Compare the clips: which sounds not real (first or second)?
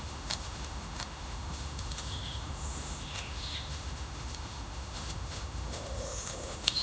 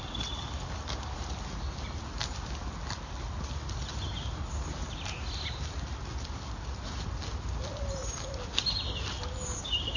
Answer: first